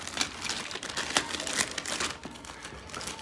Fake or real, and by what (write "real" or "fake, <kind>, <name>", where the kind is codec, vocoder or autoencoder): real